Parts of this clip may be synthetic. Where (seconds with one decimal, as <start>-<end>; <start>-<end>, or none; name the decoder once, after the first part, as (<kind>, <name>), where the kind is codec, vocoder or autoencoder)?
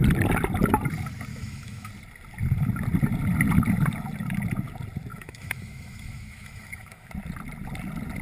1.3-1.9 (autoencoder, DAC-VAE); 5.1-7.1